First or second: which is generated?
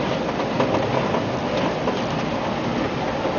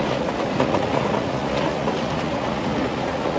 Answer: second